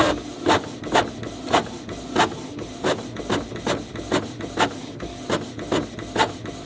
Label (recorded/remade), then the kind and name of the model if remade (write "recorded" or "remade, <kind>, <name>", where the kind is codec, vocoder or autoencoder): recorded